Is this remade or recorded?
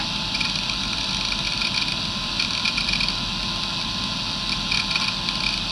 recorded